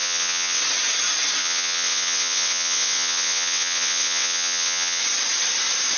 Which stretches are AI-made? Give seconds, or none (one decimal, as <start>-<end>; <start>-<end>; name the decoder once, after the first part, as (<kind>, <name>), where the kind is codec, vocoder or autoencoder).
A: 0.0-0.6 (vocoder, WaveNeXt); 1.4-5.0